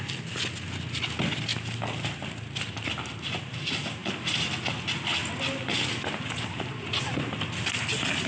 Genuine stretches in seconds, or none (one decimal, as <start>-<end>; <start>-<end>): 0.0-8.3